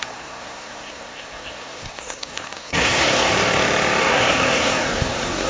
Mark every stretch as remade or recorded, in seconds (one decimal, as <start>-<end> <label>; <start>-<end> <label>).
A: 0.0-3.3 remade; 3.3-4.0 recorded; 4.0-5.5 remade